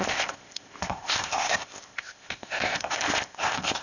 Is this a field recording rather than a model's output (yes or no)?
no